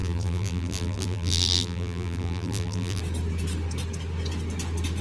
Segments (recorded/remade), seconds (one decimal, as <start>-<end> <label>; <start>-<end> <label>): 0.0-3.0 remade; 3.0-5.0 recorded